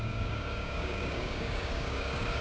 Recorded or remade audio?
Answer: remade